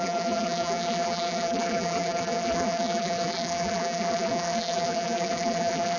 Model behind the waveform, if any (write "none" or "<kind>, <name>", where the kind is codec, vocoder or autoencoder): vocoder, BigVGAN v2